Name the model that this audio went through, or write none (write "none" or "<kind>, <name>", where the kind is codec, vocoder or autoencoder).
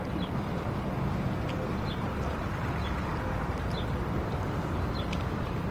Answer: none